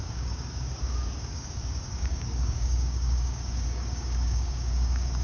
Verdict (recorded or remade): remade